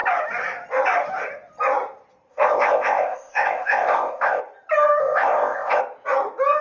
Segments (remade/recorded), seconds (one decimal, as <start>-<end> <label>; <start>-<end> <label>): 0.0-2.3 recorded; 2.3-4.4 remade; 4.4-5.0 recorded; 5.0-5.8 remade; 5.8-6.6 recorded